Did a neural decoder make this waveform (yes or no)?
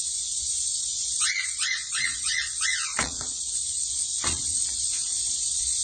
yes